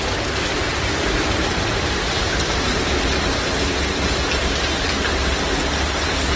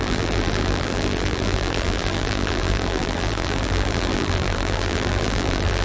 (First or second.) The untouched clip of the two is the first